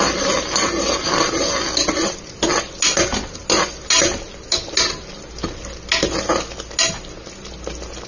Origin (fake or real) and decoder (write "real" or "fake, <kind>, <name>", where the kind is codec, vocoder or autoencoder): real